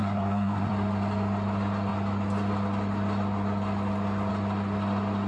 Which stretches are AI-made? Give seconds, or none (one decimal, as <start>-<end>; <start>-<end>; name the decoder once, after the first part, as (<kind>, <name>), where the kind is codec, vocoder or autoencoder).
0.0-0.7 (codec, SNAC)

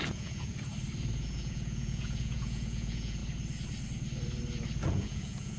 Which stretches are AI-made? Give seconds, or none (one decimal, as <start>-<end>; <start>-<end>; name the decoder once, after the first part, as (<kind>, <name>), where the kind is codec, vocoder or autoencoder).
0.0-0.5 (vocoder, Vocos); 1.2-3.2; 4.8-5.6

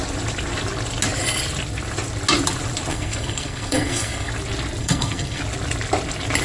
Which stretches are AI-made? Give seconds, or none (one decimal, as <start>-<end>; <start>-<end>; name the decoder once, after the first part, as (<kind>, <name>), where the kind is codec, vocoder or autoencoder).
2.9-4.3 (codec, SNAC); 4.8-5.4

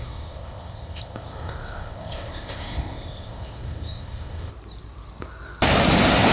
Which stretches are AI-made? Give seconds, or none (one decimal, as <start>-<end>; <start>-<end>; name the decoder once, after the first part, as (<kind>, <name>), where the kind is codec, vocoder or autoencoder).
0.0-4.5 (codec, ZipCodec)

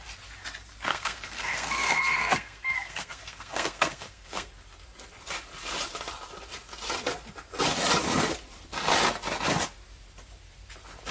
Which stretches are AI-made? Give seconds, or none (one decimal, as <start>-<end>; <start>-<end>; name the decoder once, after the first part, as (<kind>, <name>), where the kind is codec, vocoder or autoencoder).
0.9-4.5 (codec, SNAC)

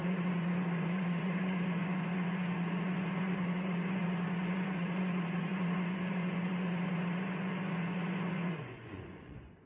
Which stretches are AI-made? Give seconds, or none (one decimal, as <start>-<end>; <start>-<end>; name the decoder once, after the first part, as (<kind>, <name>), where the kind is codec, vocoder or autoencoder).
0.0-9.7 (vocoder, Vocos)